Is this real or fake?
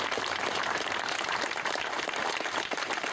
fake